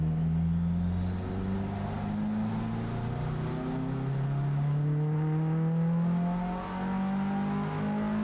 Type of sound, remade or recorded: recorded